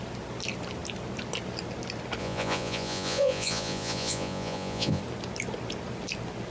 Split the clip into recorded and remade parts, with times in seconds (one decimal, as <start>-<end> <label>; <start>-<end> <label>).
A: 0.0-2.2 recorded; 2.2-5.0 remade; 5.0-6.5 recorded